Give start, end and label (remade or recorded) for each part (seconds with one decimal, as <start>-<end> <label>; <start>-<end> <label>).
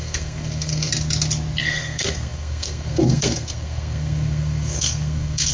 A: 0.0-0.9 remade; 0.9-1.6 recorded; 1.6-5.5 remade